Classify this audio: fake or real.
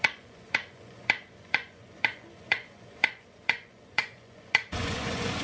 fake